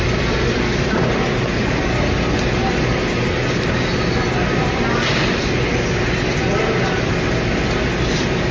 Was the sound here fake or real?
real